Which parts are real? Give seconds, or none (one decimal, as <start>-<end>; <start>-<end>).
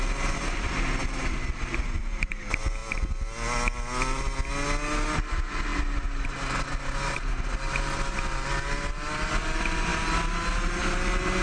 0.0-11.4